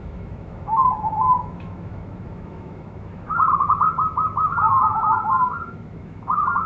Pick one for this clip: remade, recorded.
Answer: remade